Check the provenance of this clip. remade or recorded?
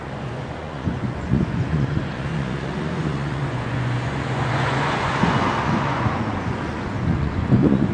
remade